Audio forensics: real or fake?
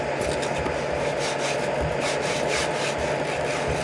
real